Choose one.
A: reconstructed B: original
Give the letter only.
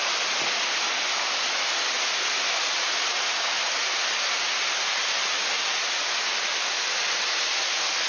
B